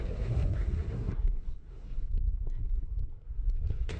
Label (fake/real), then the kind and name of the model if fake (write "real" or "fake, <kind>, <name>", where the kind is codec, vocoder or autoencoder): fake, codec, SNAC